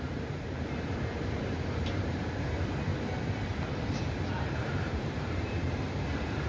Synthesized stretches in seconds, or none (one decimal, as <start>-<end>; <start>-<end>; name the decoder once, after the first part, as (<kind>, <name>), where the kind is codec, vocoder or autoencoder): 0.0-2.9 (vocoder, BigVGAN v2); 4.4-6.5